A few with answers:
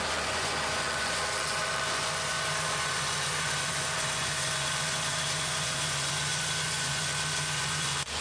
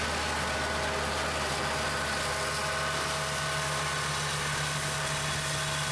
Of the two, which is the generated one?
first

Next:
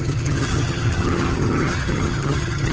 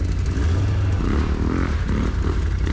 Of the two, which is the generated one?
first